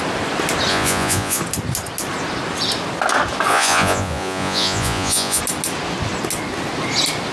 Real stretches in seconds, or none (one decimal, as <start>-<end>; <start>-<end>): 0.0-0.7; 1.4-3.5; 5.4-7.3